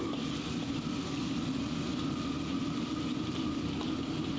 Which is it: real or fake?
real